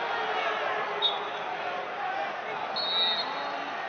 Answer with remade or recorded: recorded